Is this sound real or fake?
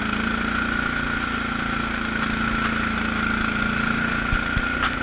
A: real